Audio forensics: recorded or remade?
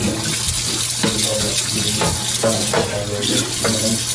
recorded